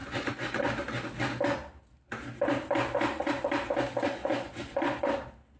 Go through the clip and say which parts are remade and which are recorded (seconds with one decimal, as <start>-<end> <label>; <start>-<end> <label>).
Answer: 0.0-0.6 remade; 0.6-4.2 recorded; 4.2-5.0 remade; 5.0-5.6 recorded